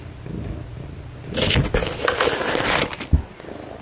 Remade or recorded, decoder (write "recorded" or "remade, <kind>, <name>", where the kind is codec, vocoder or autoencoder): recorded